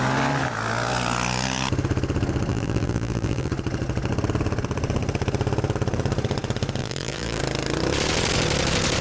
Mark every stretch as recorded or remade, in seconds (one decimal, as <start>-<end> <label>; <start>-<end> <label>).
0.0-2.5 recorded; 2.5-3.5 remade; 3.5-6.8 recorded; 6.8-7.4 remade; 7.4-9.0 recorded